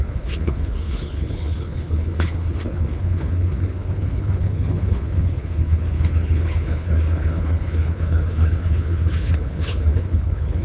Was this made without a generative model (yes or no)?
no